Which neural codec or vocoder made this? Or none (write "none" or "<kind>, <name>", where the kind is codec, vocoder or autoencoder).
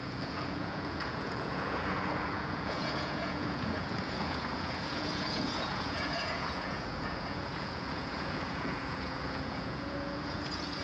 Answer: vocoder, Vocos